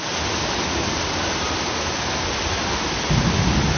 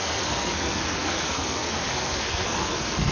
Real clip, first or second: first